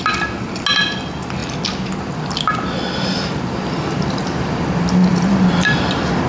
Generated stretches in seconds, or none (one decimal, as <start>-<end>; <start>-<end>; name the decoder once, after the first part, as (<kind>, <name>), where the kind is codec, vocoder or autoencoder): 5.0-5.5 (vocoder, BigVGAN v2)